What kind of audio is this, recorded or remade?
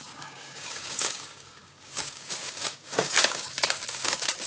remade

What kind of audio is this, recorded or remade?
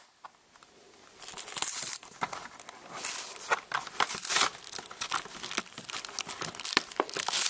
recorded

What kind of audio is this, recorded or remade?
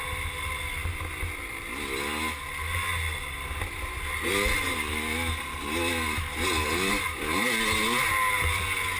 recorded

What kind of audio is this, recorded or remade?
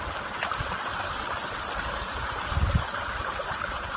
recorded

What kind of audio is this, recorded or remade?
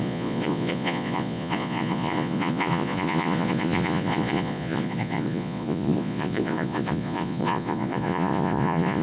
remade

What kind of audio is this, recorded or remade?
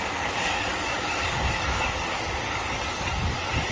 remade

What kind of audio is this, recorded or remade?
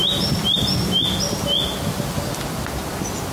recorded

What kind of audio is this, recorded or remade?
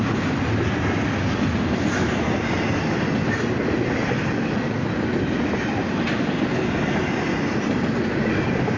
recorded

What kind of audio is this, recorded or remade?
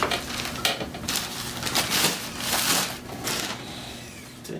remade